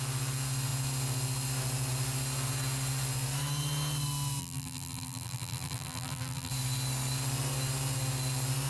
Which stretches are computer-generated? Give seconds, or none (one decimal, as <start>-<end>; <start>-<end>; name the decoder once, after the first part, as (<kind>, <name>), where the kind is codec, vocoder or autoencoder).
4.4-6.5 (vocoder, BigVGAN v2)